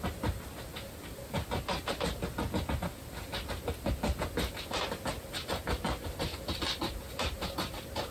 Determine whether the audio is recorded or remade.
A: recorded